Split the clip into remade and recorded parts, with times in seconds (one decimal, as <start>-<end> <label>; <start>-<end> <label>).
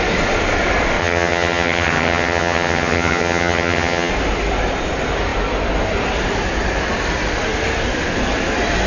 0.0-1.0 recorded; 1.0-4.1 remade; 4.1-8.9 recorded